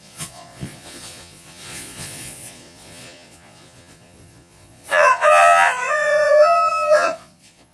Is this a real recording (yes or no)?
no